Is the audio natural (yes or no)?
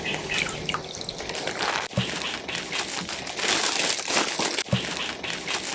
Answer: yes